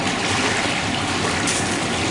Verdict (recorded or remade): recorded